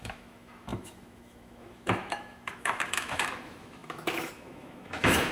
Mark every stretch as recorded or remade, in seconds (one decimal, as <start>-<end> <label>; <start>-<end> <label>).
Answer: 0.0-5.3 remade